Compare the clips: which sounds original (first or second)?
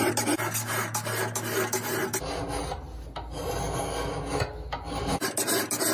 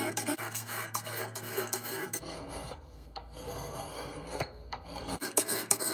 first